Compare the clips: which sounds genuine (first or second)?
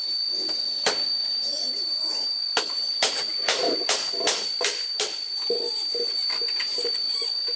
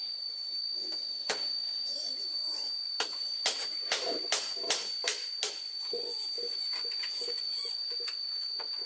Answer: second